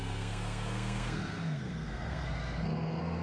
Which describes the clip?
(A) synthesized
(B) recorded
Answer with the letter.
A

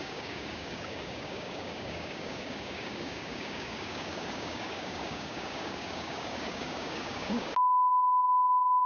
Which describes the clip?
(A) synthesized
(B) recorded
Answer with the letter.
A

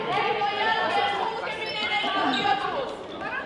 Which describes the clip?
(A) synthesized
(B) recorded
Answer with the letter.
B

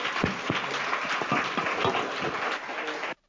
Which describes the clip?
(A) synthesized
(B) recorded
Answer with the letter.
B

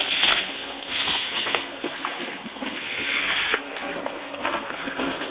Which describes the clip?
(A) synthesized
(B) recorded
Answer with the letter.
A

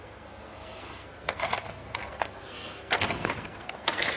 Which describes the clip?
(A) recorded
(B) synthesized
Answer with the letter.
B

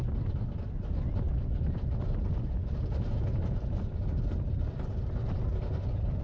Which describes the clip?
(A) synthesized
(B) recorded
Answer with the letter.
A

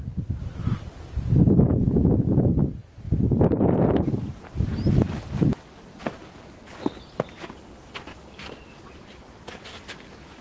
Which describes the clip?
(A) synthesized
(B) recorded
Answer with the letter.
B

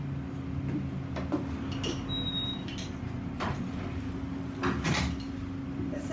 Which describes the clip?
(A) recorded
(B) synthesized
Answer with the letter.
A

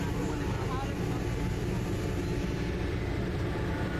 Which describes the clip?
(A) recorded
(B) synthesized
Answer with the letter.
A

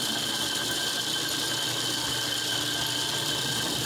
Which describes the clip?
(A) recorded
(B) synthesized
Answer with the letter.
A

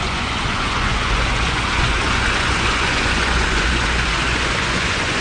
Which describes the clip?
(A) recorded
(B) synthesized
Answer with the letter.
B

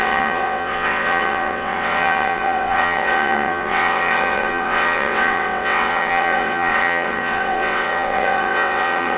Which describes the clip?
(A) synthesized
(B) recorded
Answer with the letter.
A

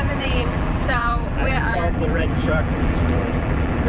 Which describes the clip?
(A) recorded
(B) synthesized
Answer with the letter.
B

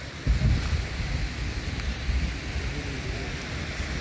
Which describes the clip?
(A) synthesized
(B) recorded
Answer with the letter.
B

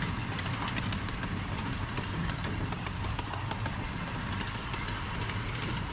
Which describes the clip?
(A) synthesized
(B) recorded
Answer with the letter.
B